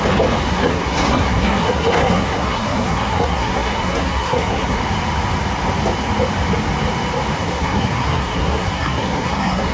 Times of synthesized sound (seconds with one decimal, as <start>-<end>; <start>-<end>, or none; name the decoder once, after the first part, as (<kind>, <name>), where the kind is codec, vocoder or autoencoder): 0.5-4.8 (codec, SNAC); 7.4-9.7